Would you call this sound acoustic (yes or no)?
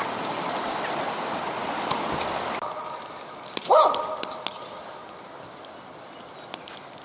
yes